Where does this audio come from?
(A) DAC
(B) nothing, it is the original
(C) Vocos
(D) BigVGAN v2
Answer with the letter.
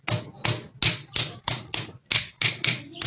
B